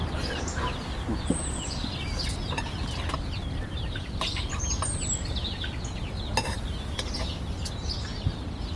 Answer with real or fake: real